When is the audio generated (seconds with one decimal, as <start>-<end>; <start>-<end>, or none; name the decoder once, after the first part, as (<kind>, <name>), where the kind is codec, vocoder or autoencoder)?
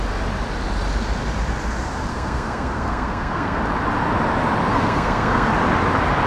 2.1-3.6 (codec, SNAC); 4.7-5.5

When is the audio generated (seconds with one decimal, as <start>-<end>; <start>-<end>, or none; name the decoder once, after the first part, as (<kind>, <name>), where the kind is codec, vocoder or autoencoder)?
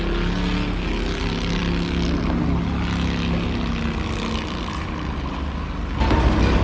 none